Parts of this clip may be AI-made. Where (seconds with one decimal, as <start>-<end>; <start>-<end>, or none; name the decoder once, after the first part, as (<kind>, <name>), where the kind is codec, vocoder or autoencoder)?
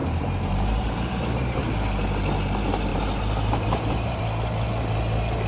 0.0-1.6 (vocoder, BigVGAN v2); 2.9-4.2